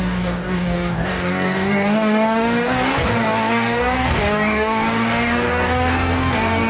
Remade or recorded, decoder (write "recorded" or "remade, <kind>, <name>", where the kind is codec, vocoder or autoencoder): remade, codec, DAC